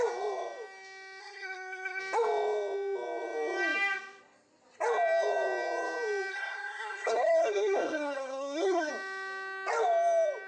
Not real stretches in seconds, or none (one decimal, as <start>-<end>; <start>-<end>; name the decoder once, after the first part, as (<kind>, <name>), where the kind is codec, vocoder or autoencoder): 1.2-2.0 (codec, SNAC); 6.3-8.9